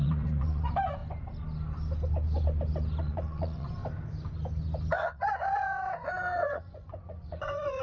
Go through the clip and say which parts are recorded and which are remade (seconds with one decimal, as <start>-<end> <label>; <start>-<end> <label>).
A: 0.0-1.0 remade; 1.0-3.0 recorded; 3.0-3.8 remade; 3.8-4.9 recorded; 4.9-7.8 remade